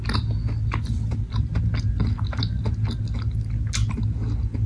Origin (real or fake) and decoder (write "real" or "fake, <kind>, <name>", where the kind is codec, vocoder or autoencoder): real